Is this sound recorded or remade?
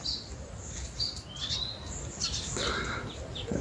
recorded